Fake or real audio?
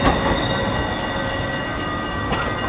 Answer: real